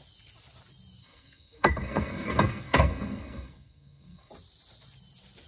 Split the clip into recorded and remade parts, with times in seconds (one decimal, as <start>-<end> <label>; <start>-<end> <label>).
0.0-1.0 recorded; 1.0-4.3 remade; 4.3-5.5 recorded